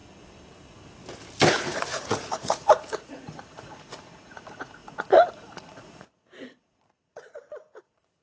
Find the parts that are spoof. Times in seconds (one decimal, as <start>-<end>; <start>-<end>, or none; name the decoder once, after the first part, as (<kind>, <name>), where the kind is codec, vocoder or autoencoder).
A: 1.5-8.2 (vocoder, Vocos)